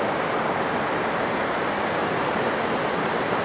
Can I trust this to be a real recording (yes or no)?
yes